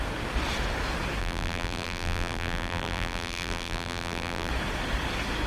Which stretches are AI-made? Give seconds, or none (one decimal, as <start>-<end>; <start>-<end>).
1.2-4.5